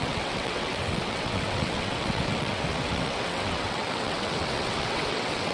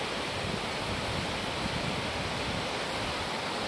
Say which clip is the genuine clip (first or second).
second